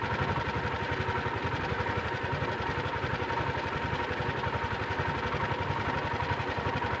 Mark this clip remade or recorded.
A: recorded